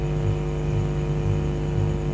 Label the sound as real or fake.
real